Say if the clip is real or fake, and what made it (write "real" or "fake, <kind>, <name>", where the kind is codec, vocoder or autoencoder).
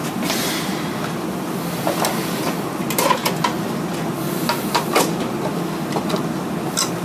real